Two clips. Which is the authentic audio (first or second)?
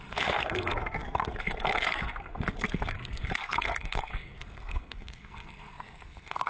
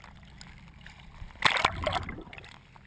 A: second